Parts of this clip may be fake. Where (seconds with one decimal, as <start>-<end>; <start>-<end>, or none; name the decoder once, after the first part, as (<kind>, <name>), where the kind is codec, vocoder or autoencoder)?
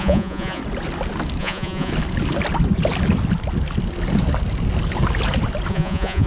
0.0-0.6 (vocoder, Vocos); 1.4-1.9; 5.7-6.3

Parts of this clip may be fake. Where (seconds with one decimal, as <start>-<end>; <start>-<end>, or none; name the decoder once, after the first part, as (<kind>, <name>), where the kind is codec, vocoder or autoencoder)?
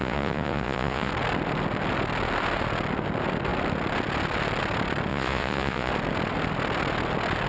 0.0-1.1 (vocoder, Vocos); 5.1-5.9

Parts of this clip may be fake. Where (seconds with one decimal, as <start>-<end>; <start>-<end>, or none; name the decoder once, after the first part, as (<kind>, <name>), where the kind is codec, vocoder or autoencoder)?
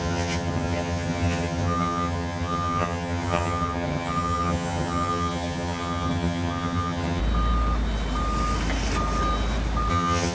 0.0-7.2 (vocoder, HiFi-GAN); 9.9-10.3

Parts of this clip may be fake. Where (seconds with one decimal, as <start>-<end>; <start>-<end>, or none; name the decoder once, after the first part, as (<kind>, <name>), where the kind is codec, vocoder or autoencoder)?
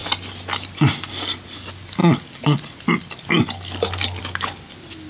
none